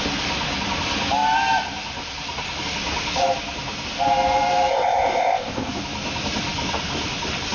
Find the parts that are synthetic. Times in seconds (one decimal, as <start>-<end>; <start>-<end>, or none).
4.7-5.7